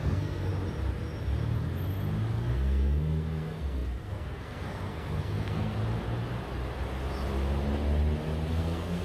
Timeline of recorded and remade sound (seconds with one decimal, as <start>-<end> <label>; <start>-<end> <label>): 0.0-0.5 remade; 0.5-2.3 recorded; 2.3-5.8 remade; 5.8-8.5 recorded; 8.5-9.0 remade